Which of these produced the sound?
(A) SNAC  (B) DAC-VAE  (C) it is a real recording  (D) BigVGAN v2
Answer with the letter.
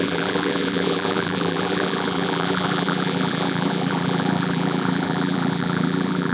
D